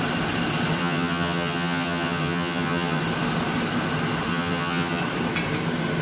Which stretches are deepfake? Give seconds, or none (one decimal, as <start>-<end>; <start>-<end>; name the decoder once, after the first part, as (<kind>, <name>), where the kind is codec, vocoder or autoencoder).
0.8-3.0 (vocoder, HiFi-GAN); 4.3-5.0